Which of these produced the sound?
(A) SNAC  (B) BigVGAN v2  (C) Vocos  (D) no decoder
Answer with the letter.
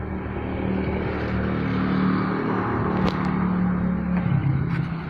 D